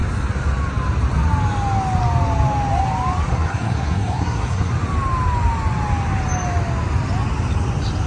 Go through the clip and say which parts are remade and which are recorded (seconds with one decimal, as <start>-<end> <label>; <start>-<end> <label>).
0.0-3.3 recorded; 3.3-4.7 remade; 4.7-8.1 recorded